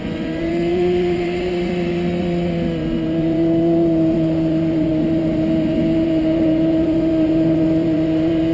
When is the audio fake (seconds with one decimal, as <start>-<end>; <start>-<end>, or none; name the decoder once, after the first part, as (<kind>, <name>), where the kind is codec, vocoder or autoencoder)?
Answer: 0.0-8.5 (vocoder, Vocos)